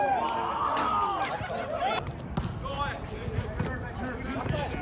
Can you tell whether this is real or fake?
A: real